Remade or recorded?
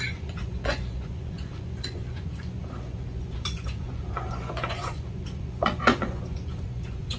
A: remade